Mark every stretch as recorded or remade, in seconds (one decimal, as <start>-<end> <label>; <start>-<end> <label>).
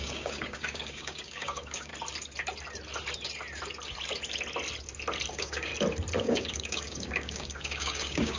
0.0-1.9 remade; 1.9-5.3 recorded; 5.3-5.7 remade; 5.7-6.2 recorded; 6.2-8.4 remade